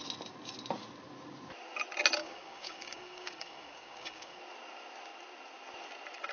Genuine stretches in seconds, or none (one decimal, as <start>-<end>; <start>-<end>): 0.0-2.2; 4.4-6.3